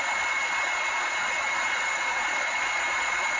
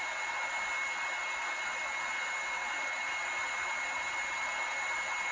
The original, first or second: second